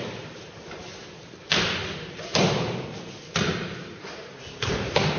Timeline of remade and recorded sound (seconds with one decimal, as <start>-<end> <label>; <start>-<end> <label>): 0.0-0.9 remade; 0.9-1.6 recorded; 1.6-5.2 remade